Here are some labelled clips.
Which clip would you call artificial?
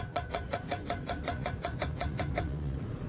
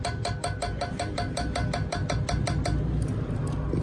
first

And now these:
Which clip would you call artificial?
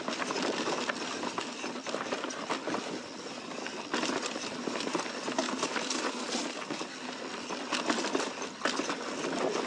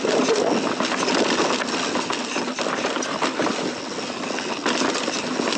first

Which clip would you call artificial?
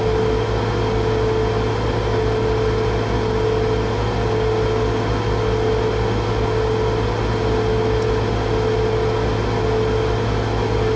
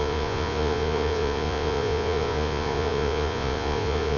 second